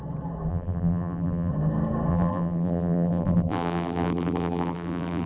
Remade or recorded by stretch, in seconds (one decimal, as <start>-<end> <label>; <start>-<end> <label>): 0.0-0.5 recorded; 0.5-1.5 remade; 1.5-2.1 recorded; 2.1-5.3 remade